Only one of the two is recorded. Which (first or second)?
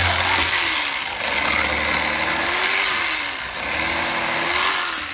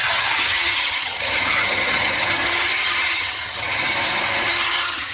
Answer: first